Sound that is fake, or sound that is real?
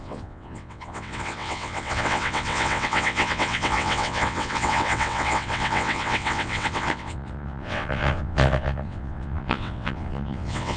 fake